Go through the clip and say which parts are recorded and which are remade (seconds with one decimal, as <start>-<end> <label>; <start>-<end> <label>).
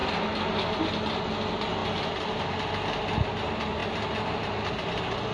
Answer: 0.0-5.3 recorded